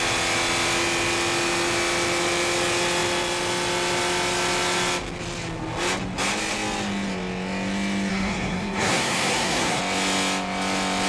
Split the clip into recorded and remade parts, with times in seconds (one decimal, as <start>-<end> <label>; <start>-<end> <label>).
0.0-8.1 recorded; 8.1-9.8 remade; 9.8-11.1 recorded